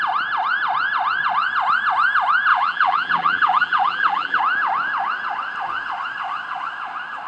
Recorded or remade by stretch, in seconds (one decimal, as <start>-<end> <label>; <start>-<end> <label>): 0.0-2.5 recorded; 2.5-4.4 remade; 4.4-7.3 recorded